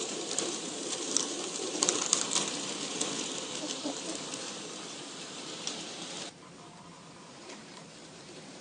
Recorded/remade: remade